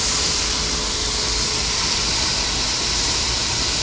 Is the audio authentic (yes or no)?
yes